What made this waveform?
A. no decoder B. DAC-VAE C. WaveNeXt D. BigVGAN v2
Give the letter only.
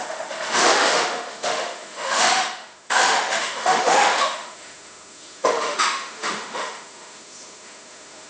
B